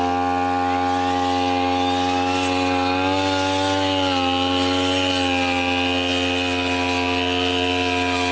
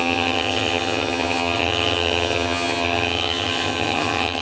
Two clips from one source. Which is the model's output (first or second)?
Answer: second